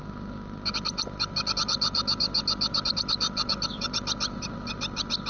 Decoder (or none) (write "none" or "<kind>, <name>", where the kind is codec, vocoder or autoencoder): none